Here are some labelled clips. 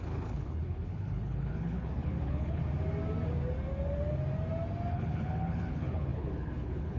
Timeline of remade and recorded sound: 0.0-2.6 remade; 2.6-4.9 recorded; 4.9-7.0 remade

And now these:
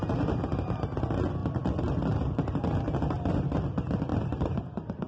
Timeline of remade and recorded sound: 0.0-5.1 recorded

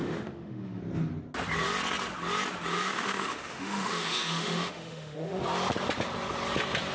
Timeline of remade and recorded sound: 0.0-0.8 remade; 0.8-2.7 recorded; 2.7-5.4 remade; 5.4-6.9 recorded